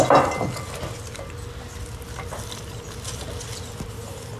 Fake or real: real